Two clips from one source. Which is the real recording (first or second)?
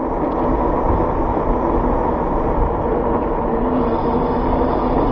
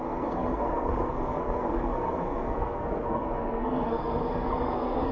first